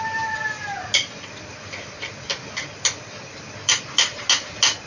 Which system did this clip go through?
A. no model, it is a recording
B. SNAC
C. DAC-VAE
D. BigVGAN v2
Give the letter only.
A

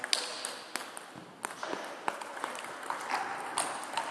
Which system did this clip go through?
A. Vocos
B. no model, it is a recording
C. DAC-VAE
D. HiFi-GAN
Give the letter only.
B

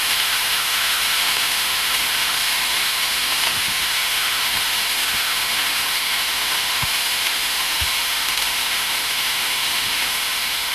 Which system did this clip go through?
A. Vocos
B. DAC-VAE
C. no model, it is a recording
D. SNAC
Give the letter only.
B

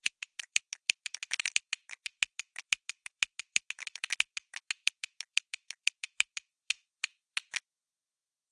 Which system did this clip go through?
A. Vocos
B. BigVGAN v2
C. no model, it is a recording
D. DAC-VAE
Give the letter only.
D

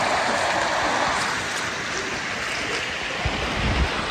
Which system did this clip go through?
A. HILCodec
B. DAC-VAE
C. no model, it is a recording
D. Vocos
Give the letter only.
C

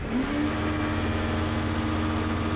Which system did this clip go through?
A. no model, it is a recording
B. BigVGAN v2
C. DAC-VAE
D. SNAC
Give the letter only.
A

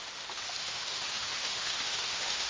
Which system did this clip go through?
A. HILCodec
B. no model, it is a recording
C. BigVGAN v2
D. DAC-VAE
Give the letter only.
D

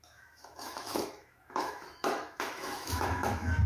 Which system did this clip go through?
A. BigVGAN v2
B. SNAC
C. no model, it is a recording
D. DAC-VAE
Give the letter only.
D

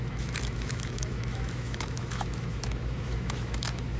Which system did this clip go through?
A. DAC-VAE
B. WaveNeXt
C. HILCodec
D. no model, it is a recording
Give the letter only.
A